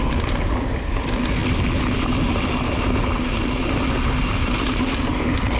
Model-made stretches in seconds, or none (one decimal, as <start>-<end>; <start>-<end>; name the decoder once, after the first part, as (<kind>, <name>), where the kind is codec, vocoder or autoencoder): none